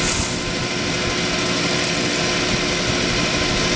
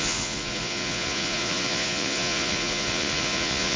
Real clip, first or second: first